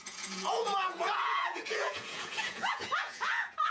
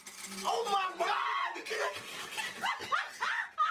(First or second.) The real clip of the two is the second